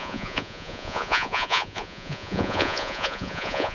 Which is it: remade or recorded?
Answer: remade